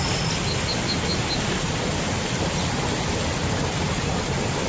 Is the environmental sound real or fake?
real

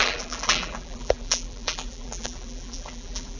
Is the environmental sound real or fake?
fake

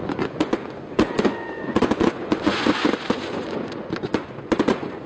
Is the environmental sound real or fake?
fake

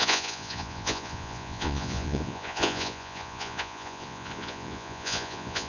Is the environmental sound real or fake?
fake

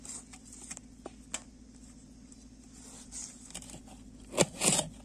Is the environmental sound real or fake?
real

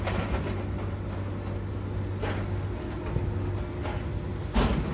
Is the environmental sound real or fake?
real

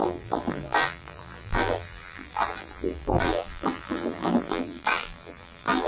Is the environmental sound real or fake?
fake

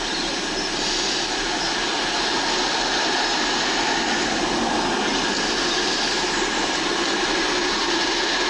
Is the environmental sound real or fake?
real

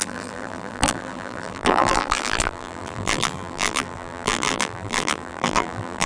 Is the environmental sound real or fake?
fake